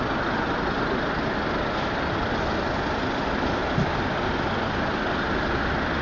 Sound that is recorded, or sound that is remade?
recorded